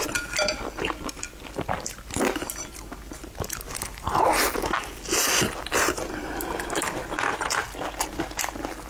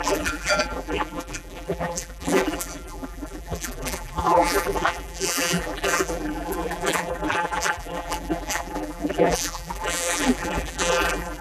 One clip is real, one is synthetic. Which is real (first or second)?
first